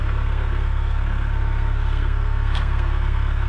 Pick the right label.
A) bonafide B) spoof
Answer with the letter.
B